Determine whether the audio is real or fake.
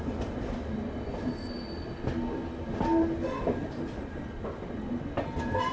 real